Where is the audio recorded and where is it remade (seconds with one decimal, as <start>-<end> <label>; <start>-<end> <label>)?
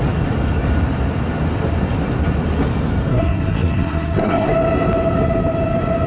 0.0-3.1 recorded; 3.1-4.5 remade; 4.5-6.1 recorded